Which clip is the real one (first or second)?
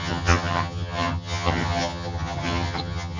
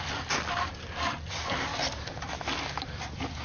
second